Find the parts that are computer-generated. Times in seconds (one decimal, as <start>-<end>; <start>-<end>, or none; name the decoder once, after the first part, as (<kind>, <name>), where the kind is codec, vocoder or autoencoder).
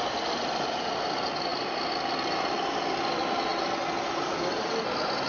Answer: none